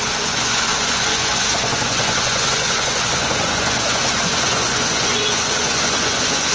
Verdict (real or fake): fake